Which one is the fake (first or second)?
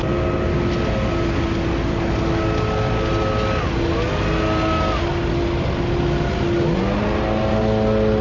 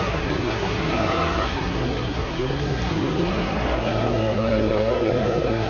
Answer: second